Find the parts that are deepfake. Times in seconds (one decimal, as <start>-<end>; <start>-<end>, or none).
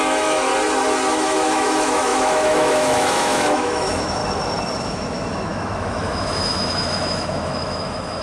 0.0-0.5; 1.1-4.2; 4.8-8.2